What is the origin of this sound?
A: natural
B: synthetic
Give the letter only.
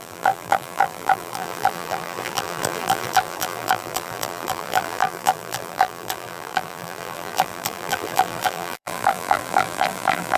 B